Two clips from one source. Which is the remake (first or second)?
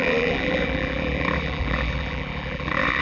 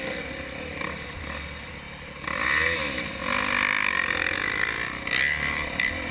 first